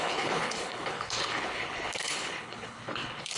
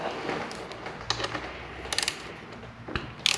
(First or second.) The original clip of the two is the second